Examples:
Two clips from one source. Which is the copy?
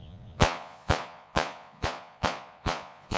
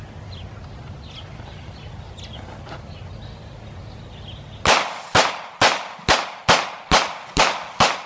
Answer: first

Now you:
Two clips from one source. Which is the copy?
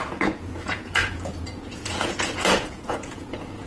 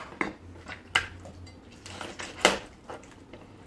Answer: first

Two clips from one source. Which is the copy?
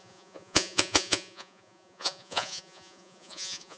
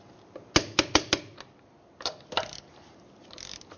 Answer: first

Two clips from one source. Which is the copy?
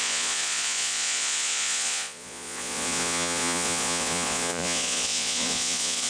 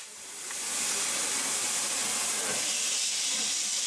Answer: first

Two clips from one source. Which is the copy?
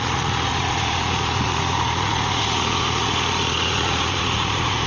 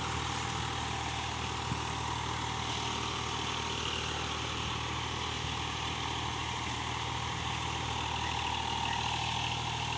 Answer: first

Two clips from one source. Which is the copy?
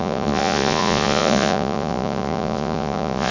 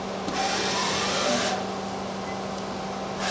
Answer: first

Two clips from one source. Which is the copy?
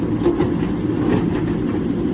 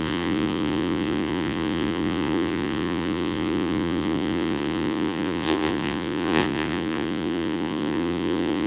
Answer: second